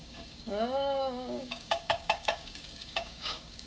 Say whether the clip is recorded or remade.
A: remade